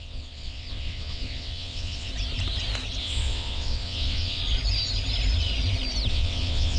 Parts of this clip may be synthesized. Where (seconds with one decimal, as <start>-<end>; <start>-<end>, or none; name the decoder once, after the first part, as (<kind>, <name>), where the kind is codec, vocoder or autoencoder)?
0.0-2.1 (vocoder, WaveNeXt); 3.0-4.4; 6.1-6.8